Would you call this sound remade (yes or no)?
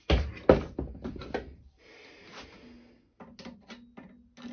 no